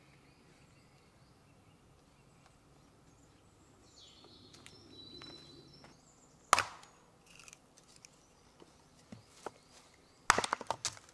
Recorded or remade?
recorded